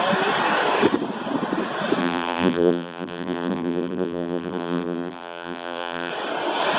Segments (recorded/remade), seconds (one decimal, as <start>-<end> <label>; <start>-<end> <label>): 0.0-2.0 recorded; 2.0-6.1 remade; 6.1-6.8 recorded